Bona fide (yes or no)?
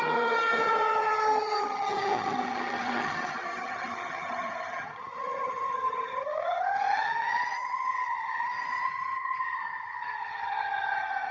no